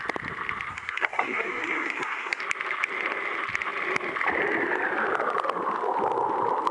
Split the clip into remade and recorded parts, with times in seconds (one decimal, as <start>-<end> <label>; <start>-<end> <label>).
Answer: 0.0-0.7 recorded; 0.7-2.4 remade; 2.4-6.7 recorded